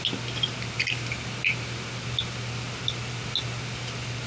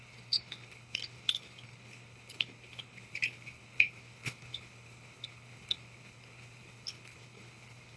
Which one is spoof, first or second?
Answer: second